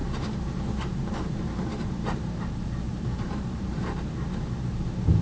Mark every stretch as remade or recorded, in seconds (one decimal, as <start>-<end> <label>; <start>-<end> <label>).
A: 0.0-2.5 remade; 2.5-2.9 recorded; 2.9-4.3 remade; 4.3-5.2 recorded